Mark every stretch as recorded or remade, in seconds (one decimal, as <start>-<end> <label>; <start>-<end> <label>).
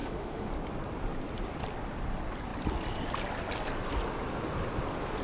0.0-0.5 remade; 0.5-5.2 recorded